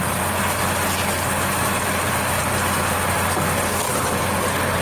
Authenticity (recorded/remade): recorded